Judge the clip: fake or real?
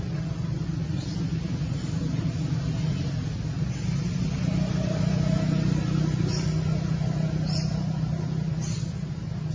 real